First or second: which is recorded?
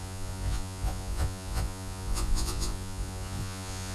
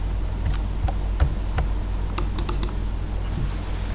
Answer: second